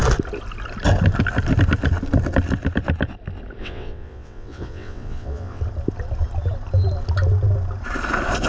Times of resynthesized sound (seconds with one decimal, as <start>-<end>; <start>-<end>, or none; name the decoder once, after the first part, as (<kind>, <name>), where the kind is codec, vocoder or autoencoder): 3.6-5.6 (vocoder, WaveNeXt)